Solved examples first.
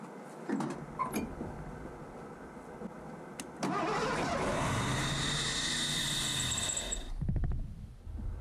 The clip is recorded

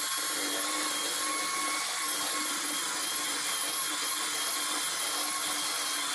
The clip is recorded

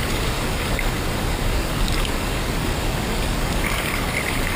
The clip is remade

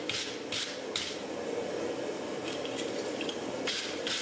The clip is recorded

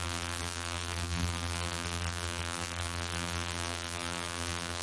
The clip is remade